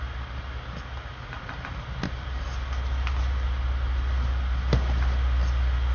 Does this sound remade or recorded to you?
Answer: recorded